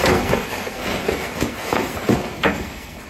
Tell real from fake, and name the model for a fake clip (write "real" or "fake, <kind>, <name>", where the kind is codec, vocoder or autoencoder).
fake, codec, SNAC